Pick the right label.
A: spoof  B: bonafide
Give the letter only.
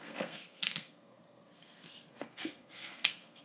A